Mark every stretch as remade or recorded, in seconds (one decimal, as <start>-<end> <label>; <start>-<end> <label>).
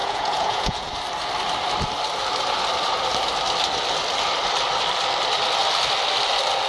0.0-0.9 remade; 0.9-6.7 recorded